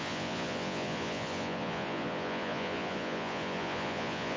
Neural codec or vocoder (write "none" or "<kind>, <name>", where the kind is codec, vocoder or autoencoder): vocoder, Vocos